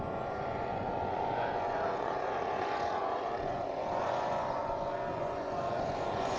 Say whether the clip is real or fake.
fake